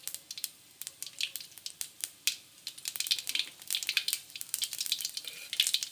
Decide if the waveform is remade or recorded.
recorded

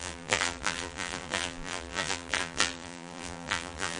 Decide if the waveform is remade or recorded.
remade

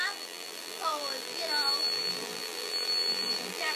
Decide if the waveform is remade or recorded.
remade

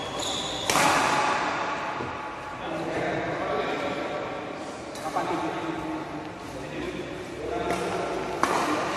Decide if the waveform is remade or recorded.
recorded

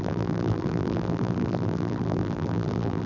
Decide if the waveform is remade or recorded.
remade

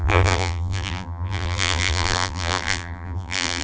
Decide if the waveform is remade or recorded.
remade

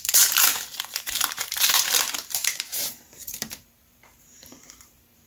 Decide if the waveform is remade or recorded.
remade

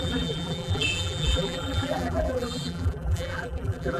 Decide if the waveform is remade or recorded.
remade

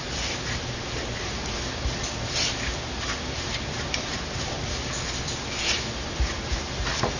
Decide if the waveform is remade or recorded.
recorded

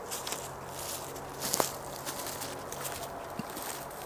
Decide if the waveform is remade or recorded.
recorded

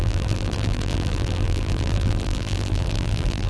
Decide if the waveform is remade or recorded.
remade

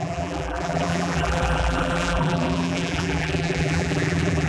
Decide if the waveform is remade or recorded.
remade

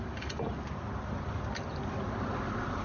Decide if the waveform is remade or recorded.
remade